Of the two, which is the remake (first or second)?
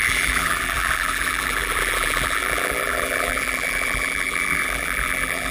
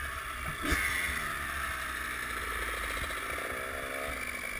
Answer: first